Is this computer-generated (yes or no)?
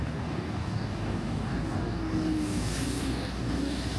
yes